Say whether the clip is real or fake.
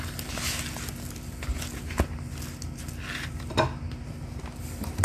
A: real